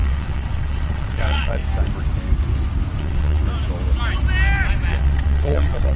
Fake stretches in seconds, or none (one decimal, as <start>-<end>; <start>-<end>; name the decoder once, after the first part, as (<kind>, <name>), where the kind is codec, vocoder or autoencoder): 0.0-1.6 (vocoder, WaveNeXt); 3.0-3.4; 4.9-6.0